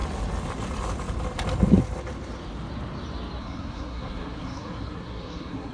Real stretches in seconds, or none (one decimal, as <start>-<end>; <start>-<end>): 0.0-3.4